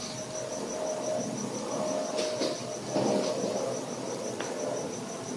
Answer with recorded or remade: recorded